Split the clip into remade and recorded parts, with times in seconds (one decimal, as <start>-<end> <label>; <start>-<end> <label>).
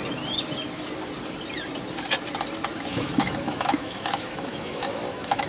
0.0-2.9 recorded; 2.9-5.5 remade